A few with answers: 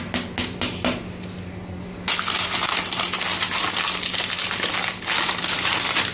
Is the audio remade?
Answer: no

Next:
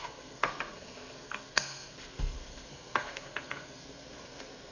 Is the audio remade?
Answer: yes